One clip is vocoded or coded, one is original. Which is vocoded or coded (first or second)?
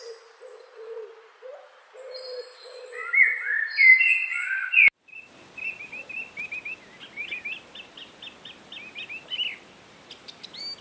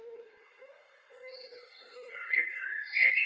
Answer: second